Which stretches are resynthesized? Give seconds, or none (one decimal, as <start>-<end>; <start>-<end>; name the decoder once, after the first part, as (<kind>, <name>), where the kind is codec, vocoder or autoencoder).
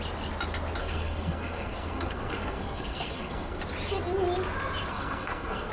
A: 0.8-3.6 (codec, SNAC); 4.9-5.7